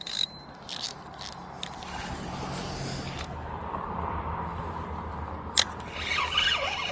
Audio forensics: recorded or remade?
recorded